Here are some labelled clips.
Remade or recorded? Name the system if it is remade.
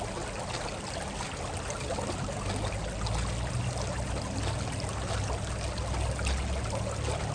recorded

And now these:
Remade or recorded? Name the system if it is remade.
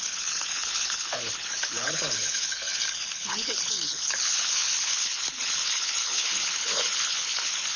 remade, codec, HILCodec